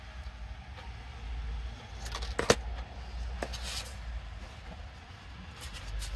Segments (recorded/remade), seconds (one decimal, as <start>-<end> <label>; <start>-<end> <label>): 0.0-6.2 recorded